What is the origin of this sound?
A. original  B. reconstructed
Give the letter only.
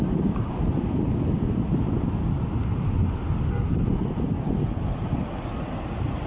A